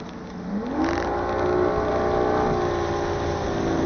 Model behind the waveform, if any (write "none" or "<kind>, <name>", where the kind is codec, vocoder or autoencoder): none